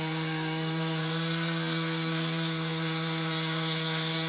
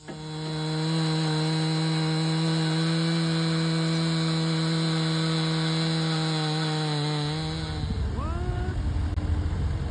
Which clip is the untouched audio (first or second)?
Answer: second